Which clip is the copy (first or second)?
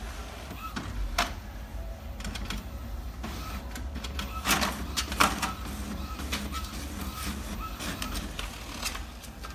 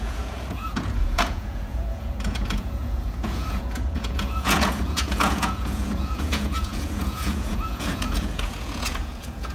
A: second